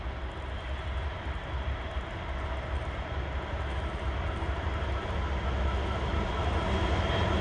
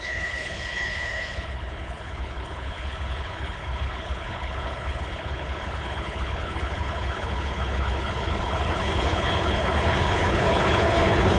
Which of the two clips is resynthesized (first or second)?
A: second